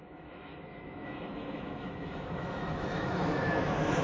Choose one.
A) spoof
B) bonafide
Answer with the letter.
A